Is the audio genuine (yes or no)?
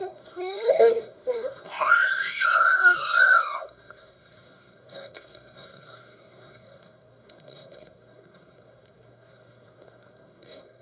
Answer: no